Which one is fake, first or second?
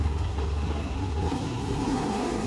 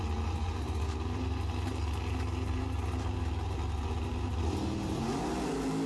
first